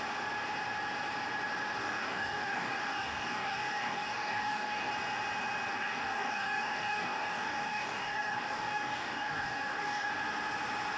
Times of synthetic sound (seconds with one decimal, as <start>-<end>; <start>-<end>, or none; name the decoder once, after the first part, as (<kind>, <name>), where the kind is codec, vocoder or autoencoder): 1.8-4.9 (codec, DAC); 5.7-10.1